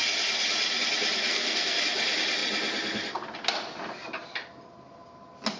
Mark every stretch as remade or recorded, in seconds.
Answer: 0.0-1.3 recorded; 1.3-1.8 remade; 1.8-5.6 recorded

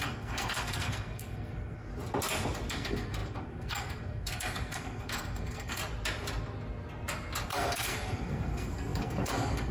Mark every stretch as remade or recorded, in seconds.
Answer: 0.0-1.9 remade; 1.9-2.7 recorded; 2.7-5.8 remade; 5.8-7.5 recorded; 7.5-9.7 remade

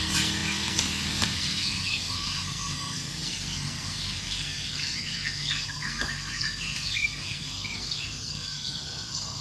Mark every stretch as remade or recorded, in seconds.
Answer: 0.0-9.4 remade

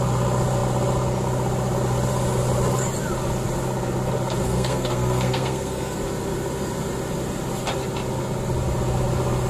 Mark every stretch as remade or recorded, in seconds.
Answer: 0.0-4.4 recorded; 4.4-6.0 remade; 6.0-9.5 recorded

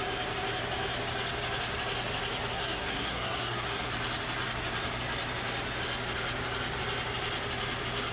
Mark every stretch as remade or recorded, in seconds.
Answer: 0.0-2.5 recorded; 2.5-3.9 remade; 3.9-8.1 recorded

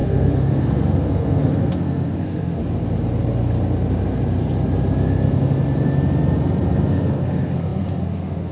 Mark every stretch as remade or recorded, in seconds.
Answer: 0.0-2.6 remade; 2.6-6.9 recorded; 6.9-8.5 remade